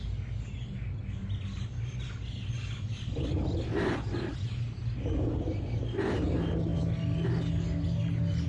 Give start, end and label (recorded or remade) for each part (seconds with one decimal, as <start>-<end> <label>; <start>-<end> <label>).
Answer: 0.0-8.5 recorded